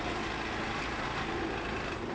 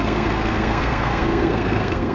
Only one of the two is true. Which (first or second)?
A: first